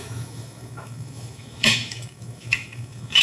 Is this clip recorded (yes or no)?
no